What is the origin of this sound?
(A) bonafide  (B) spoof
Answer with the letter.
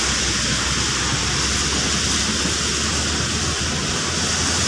A